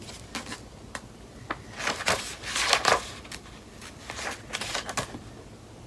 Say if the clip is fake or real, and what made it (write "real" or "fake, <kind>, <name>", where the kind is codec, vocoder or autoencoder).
real